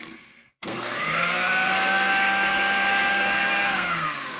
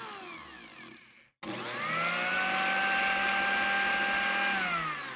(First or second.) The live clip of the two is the second